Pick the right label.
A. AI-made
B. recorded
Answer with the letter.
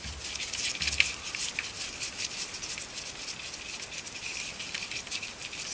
B